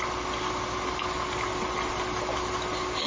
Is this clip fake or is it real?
real